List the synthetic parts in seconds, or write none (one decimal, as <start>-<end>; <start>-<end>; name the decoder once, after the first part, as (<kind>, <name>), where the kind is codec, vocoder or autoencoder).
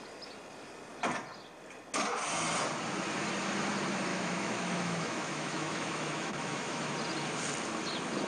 4.1-6.9 (autoencoder, DAC-VAE)